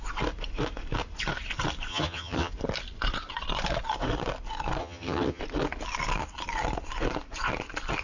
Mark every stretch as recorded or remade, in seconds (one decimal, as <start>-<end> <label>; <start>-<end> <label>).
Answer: 0.0-1.9 recorded; 1.9-2.5 remade; 2.5-4.8 recorded; 4.8-5.4 remade; 5.4-8.0 recorded